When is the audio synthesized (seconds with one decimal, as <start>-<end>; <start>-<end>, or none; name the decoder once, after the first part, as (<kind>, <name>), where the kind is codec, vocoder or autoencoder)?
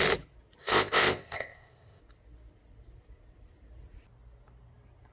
0.6-2.0 (codec, ZipCodec)